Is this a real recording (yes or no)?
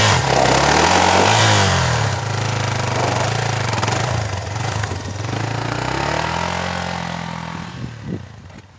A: yes